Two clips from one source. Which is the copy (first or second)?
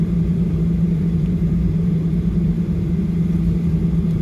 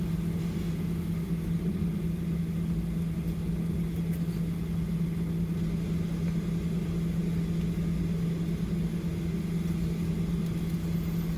first